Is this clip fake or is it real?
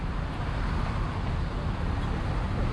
real